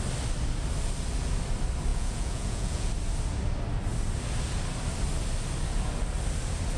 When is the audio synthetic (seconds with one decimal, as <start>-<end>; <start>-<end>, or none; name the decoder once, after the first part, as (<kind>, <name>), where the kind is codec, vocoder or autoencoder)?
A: 1.9-2.9 (vocoder, Vocos)